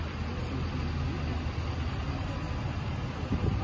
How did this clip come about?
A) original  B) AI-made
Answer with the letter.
A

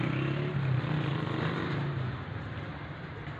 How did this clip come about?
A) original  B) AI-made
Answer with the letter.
A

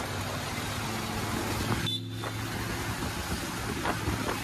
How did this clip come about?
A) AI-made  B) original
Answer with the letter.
B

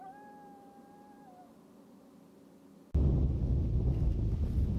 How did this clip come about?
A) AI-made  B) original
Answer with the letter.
B